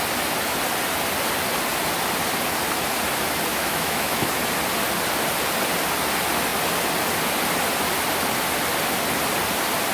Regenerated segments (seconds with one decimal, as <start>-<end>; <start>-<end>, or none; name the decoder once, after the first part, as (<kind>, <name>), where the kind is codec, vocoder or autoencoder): 3.5-4.4 (autoencoder, DAC-VAE)